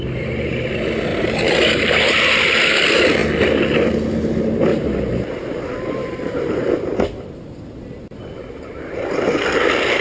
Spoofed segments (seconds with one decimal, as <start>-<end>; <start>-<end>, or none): 1.1-1.9; 4.7-5.6; 6.0-6.7